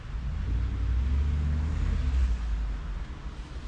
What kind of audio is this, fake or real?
real